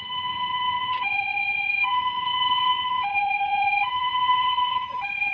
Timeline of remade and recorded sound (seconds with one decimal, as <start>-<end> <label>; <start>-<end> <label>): 0.0-5.3 remade

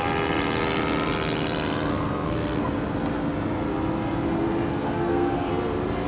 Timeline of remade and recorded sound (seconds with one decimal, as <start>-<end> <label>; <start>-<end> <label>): 0.0-1.9 recorded; 1.9-2.6 remade; 2.6-4.7 recorded; 4.7-5.5 remade; 5.5-6.1 recorded

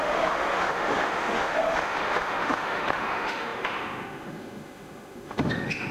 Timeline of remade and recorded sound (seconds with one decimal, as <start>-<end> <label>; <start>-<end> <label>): 0.0-5.9 remade

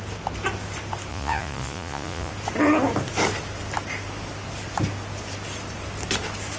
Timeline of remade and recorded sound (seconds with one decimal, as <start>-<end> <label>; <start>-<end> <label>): 0.0-1.1 recorded; 1.1-2.3 remade; 2.3-6.6 recorded